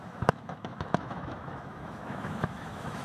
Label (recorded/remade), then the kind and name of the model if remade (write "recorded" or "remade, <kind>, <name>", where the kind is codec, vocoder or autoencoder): remade, autoencoder, DAC-VAE